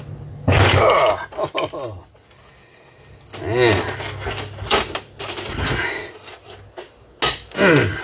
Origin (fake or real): real